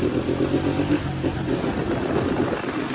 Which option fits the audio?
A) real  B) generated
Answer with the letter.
A